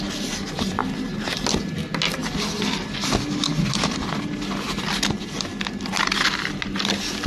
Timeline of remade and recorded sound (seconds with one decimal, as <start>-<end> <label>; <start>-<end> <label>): 0.0-7.3 recorded